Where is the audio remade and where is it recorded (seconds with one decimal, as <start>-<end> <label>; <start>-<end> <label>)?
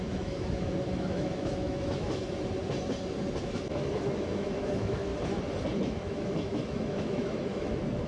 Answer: 0.0-2.2 remade; 2.2-3.4 recorded; 3.4-5.1 remade; 5.1-5.7 recorded; 5.7-8.1 remade